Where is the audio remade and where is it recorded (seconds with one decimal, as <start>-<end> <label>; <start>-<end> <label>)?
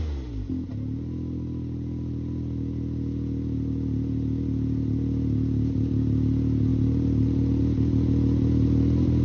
0.0-6.7 recorded; 6.7-7.6 remade; 7.6-9.2 recorded